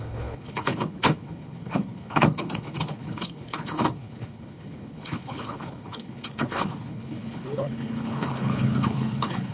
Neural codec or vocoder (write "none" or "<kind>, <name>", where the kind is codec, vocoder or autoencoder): codec, HILCodec